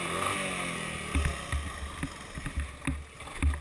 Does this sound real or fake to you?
real